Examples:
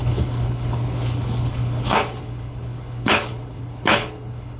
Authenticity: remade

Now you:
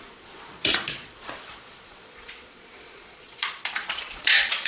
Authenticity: remade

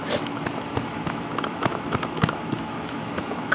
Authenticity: remade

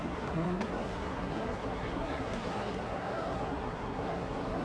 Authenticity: remade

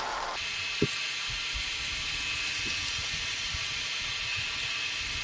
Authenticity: recorded